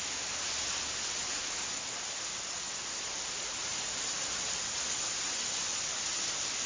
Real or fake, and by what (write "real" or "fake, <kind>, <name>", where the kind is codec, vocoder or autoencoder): real